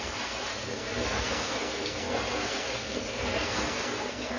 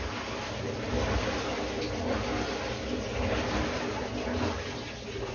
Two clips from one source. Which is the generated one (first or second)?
first